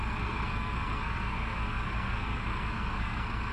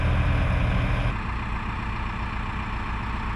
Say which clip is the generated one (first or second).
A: first